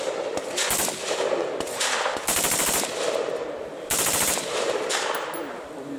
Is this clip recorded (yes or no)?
yes